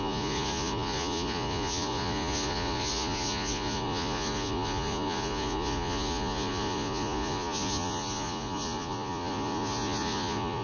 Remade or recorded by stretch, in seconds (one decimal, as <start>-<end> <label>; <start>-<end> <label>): 0.0-10.6 remade